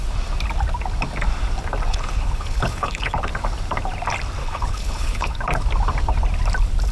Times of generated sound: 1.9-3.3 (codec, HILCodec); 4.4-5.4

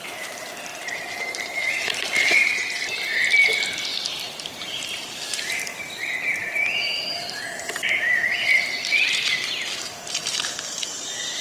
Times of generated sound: 0.7-2.8 (vocoder, BigVGAN v2); 3.9-5.6; 6.4-11.4

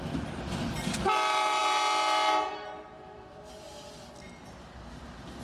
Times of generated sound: none

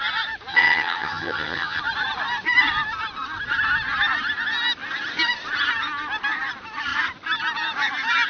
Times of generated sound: 0.5-1.8 (vocoder, HiFi-GAN)